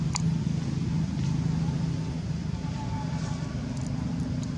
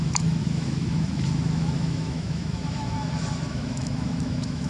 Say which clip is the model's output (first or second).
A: second